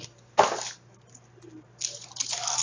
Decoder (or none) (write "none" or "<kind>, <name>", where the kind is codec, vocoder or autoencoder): none